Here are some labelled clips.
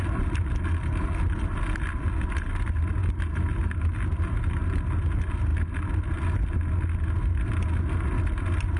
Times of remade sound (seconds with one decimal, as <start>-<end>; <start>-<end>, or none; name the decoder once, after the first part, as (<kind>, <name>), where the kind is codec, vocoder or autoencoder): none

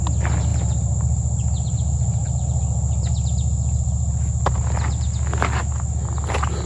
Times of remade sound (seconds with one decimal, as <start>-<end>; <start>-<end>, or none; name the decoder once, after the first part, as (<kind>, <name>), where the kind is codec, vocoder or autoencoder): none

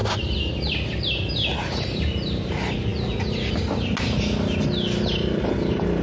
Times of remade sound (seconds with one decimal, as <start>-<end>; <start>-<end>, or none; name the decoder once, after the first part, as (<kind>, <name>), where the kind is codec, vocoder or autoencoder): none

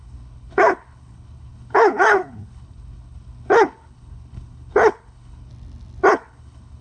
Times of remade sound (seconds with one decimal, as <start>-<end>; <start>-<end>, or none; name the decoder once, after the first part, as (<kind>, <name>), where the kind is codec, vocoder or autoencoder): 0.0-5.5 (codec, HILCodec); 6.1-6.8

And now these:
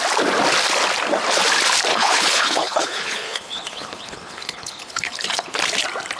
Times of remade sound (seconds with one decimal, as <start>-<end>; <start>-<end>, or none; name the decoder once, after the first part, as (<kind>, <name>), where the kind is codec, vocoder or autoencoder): 1.9-5.6 (codec, HILCodec)

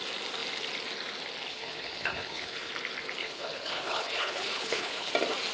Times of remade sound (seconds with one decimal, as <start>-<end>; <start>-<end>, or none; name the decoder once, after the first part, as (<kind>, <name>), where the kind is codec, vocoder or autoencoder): 1.5-2.7 (codec, HILCodec); 3.2-5.1

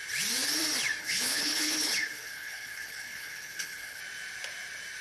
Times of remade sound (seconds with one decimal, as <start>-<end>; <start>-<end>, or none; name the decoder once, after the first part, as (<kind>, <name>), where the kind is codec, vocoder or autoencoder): 1.0-4.0 (codec, HILCodec)

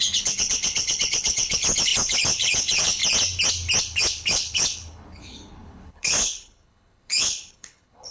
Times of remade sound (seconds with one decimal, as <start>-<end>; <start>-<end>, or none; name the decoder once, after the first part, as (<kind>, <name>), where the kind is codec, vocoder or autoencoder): 0.0-3.0 (codec, HILCodec); 3.8-8.1